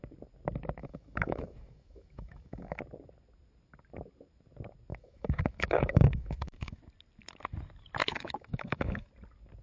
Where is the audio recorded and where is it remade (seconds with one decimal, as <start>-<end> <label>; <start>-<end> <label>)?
0.0-0.8 recorded; 0.8-2.8 remade; 2.8-4.9 recorded; 4.9-6.8 remade; 6.8-8.0 recorded; 8.0-9.1 remade; 9.1-9.6 recorded

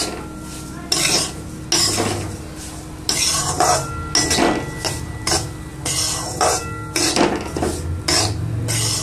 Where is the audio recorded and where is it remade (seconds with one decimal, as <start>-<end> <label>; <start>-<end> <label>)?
0.0-9.0 recorded

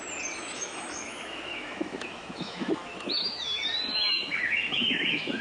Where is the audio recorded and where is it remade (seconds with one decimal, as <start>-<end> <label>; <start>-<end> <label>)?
0.0-0.4 recorded; 0.4-3.6 remade; 3.6-4.1 recorded; 4.1-5.4 remade

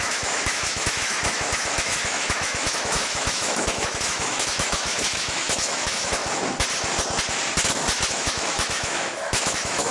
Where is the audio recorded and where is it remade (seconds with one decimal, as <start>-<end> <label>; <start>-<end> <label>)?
0.0-6.2 remade; 6.2-8.1 recorded; 8.1-9.9 remade